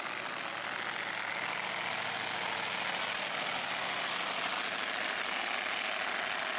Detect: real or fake real